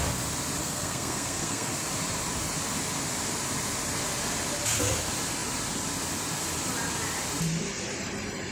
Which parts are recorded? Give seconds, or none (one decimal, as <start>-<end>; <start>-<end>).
0.0-0.6; 1.7-8.5